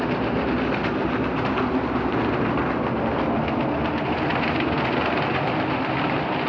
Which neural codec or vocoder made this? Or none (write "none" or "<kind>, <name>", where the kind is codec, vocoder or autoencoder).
none